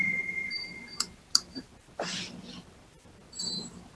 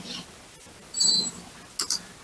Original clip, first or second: second